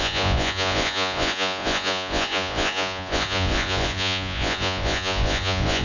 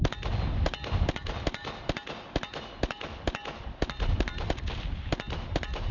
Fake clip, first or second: first